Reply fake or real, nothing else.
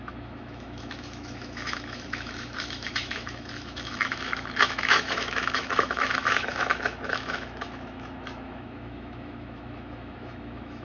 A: fake